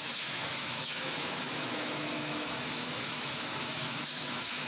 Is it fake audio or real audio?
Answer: fake